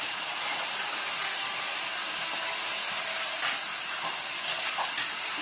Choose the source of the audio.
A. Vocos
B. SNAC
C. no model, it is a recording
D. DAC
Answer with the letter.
C